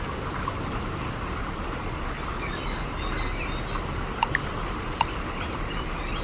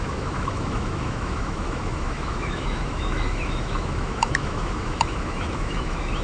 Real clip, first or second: first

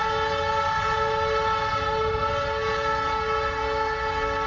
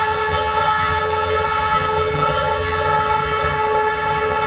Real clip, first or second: first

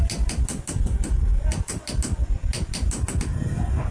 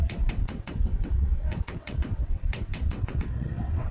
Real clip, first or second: first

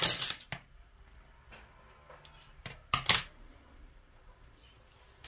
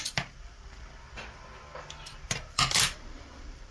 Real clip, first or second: first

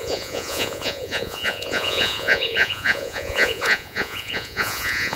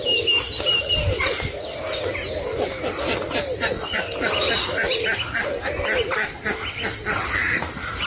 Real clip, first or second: second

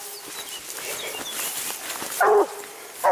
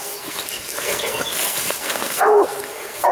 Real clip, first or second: first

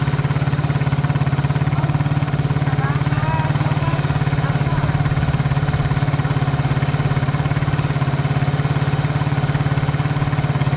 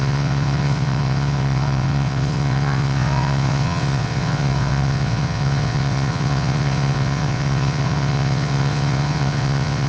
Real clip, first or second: first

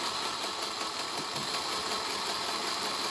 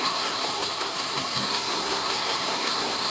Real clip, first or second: first